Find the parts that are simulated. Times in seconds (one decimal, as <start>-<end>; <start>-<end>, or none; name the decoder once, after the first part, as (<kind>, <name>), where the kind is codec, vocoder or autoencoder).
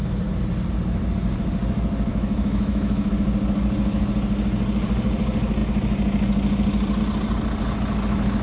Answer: 2.1-3.1 (autoencoder, DAC-VAE)